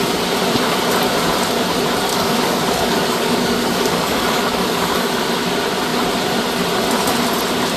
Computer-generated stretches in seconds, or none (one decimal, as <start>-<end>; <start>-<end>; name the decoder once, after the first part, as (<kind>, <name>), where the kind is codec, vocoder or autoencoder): 2.1-5.1 (codec, DAC)